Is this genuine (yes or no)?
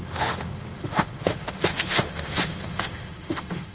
no